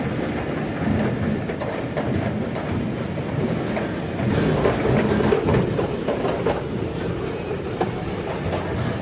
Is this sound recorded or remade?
recorded